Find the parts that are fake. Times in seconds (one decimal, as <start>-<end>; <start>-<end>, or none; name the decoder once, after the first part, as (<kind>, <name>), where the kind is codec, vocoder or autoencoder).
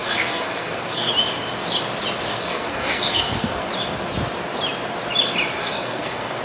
0.0-1.1 (codec, SNAC); 2.3-3.7; 5.6-6.4